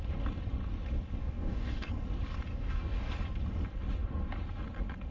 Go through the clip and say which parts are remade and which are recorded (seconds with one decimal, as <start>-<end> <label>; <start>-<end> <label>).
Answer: 0.0-1.2 recorded; 1.2-1.9 remade; 1.9-2.5 recorded; 2.5-3.1 remade; 3.1-5.1 recorded